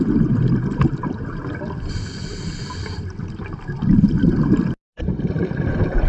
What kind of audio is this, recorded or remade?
remade